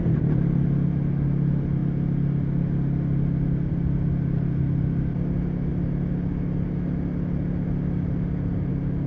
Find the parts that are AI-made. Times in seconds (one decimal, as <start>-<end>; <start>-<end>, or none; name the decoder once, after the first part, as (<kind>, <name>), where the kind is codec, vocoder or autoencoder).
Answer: none